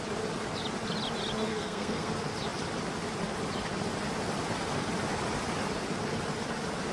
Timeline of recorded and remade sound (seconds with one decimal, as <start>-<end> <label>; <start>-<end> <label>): 0.0-1.5 recorded; 1.5-2.1 remade; 2.1-6.9 recorded

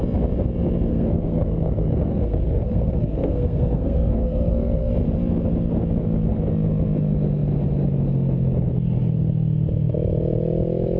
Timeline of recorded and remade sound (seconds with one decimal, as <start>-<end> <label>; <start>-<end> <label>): 0.0-0.9 recorded; 0.9-4.9 remade; 4.9-11.0 recorded

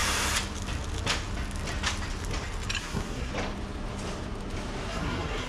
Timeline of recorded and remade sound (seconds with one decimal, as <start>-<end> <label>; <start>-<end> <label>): 0.0-2.8 recorded; 2.8-3.3 remade; 3.3-4.9 recorded; 4.9-5.5 remade

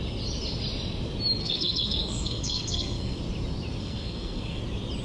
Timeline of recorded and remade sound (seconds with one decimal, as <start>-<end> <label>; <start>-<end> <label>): 0.0-1.4 recorded; 1.4-3.2 remade; 3.2-3.8 recorded; 3.8-4.6 remade; 4.6-5.0 recorded

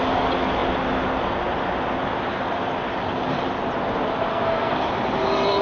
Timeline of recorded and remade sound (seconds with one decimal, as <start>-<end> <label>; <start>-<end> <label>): 0.0-4.3 recorded; 4.3-4.9 remade; 4.9-5.6 recorded